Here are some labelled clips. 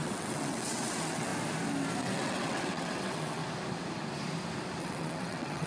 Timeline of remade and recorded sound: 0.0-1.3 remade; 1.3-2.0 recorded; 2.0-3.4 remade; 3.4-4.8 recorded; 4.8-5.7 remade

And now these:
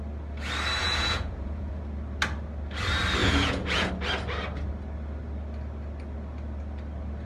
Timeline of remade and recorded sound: 0.0-0.8 recorded; 0.8-1.8 remade; 1.8-3.2 recorded; 3.2-3.9 remade; 3.9-7.3 recorded

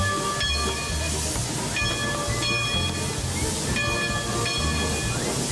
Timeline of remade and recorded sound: 0.0-5.5 recorded

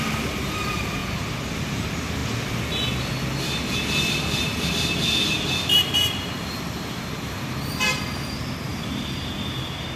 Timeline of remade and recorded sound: 0.0-5.7 recorded; 5.7-8.0 remade; 8.0-8.7 recorded; 8.7-9.3 remade; 9.3-10.0 recorded